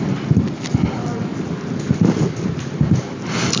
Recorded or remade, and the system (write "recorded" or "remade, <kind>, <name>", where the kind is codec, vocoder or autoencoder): recorded